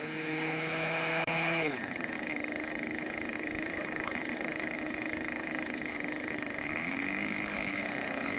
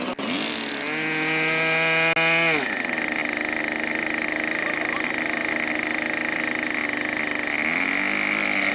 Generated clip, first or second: first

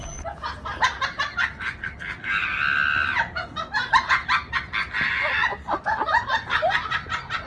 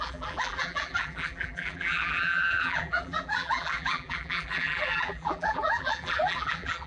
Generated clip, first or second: second